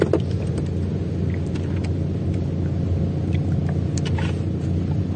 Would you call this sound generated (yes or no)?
no